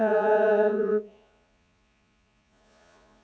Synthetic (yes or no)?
yes